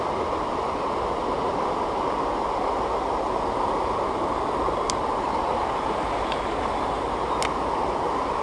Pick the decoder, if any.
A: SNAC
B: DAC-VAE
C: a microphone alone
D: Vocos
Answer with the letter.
C